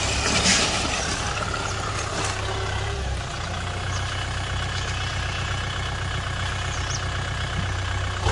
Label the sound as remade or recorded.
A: recorded